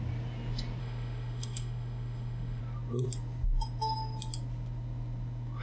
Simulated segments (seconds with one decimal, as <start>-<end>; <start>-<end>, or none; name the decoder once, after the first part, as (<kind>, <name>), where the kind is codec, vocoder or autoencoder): 0.8-2.6 (autoencoder, DAC-VAE)